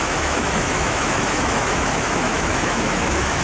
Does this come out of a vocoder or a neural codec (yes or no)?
yes